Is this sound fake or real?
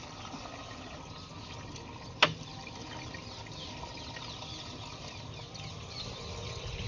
real